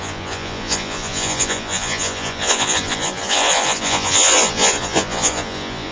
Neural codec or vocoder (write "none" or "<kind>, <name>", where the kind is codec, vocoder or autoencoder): vocoder, Vocos